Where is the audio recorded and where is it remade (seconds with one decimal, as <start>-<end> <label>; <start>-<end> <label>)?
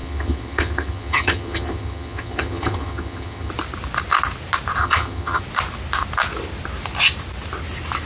0.0-3.5 remade; 3.5-4.8 recorded; 4.8-5.4 remade; 5.4-8.1 recorded